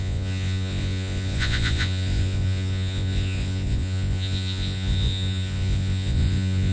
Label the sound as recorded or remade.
remade